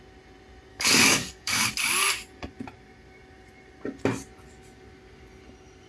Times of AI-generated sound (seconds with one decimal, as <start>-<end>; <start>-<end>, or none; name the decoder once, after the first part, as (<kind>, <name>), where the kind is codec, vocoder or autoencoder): 0.7-1.7 (codec, DAC)